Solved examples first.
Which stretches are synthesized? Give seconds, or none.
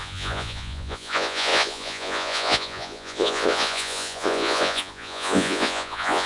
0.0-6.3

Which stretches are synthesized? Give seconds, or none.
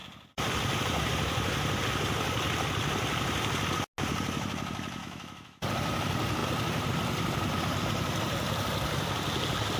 5.0-5.6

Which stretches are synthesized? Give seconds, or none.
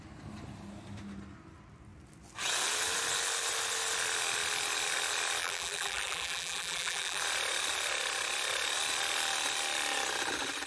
5.4-7.2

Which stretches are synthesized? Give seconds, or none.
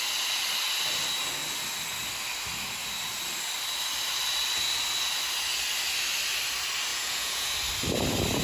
6.9-7.5